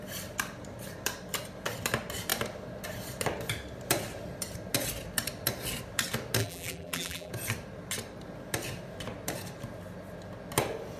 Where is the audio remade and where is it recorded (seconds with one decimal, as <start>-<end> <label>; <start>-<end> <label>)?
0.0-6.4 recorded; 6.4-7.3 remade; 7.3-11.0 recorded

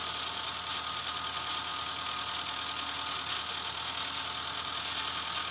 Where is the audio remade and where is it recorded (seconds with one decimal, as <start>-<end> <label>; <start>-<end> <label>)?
0.0-5.5 recorded

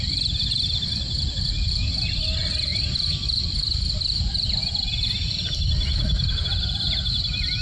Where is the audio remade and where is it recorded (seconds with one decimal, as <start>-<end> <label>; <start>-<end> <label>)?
0.0-6.5 remade; 6.5-7.6 recorded

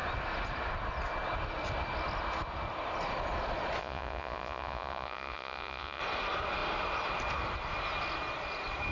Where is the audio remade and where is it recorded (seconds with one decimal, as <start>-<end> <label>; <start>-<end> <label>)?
0.0-3.8 recorded; 3.8-6.0 remade; 6.0-8.9 recorded

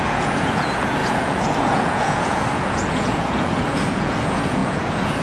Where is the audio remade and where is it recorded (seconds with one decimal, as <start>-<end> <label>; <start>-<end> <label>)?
0.0-5.2 remade

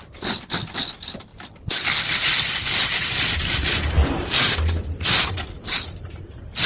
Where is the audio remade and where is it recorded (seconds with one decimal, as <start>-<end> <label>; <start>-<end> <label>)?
0.0-1.3 recorded; 1.3-5.3 remade; 5.3-6.7 recorded